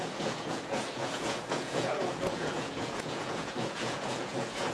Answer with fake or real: fake